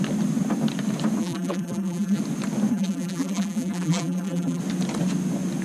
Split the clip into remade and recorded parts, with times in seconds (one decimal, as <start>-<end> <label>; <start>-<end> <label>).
0.0-1.2 recorded; 1.2-2.2 remade; 2.2-2.7 recorded; 2.7-4.6 remade; 4.6-5.6 recorded